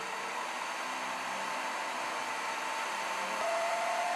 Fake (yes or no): no